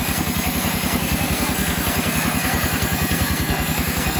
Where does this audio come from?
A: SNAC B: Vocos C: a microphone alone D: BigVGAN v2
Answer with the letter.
A